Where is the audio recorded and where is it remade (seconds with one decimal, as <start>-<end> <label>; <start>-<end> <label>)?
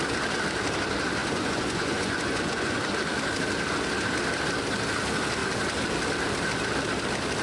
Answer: 0.0-1.2 recorded; 1.2-2.8 remade; 2.8-7.4 recorded